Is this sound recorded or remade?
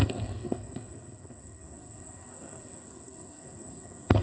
remade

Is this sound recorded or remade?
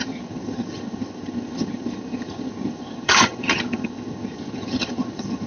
remade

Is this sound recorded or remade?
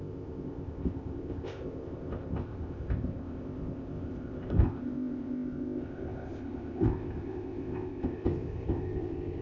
remade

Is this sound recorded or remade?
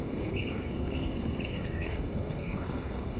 remade